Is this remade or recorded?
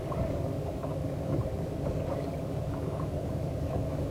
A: remade